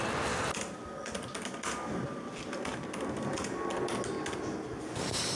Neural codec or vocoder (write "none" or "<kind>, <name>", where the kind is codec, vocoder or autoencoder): none